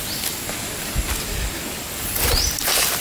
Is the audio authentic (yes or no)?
yes